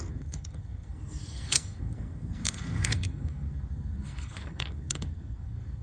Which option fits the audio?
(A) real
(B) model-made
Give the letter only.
B